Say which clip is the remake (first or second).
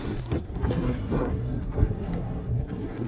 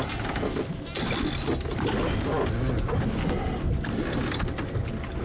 first